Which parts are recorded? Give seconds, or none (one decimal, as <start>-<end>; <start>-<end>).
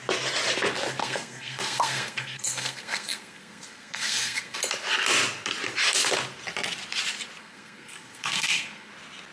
0.0-1.0; 4.6-7.4; 8.9-9.3